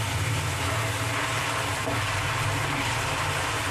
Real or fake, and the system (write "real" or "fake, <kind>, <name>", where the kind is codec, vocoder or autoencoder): real